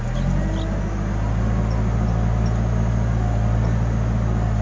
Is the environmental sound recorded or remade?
recorded